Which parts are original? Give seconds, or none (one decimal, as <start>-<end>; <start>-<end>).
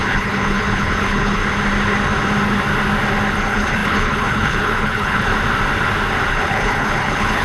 1.4-3.4; 5.3-6.3